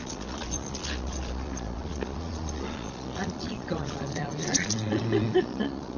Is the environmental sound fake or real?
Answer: fake